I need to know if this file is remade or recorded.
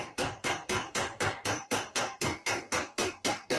remade